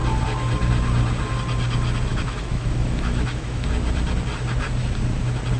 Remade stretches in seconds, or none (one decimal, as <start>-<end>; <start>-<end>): 2.1-3.7